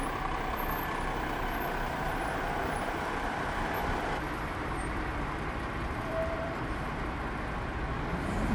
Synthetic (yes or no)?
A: yes